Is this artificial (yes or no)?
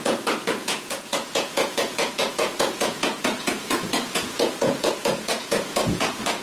yes